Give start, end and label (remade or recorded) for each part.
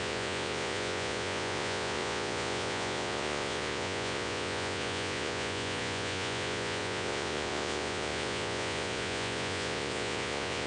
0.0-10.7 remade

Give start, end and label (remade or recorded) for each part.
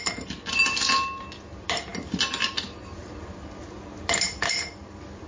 0.0-5.3 recorded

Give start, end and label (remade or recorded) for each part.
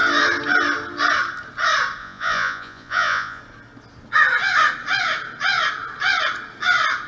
0.0-2.0 recorded; 2.0-3.4 remade; 3.4-7.1 recorded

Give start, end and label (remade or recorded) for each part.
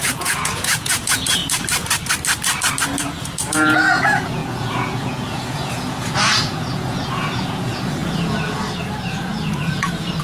0.0-1.4 remade; 1.4-3.0 recorded; 3.0-10.2 remade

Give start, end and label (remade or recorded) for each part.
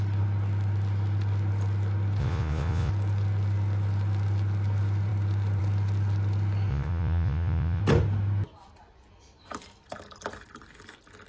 0.0-2.2 recorded; 2.2-2.9 remade; 2.9-6.7 recorded; 6.7-7.8 remade; 7.8-11.3 recorded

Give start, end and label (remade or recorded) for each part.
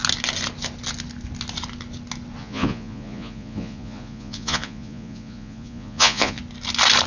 0.0-2.4 recorded; 2.4-6.4 remade; 6.4-7.1 recorded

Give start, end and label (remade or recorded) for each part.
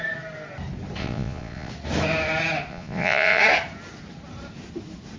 0.0-1.0 recorded; 1.0-1.7 remade; 1.7-2.7 recorded; 2.7-3.4 remade; 3.4-5.2 recorded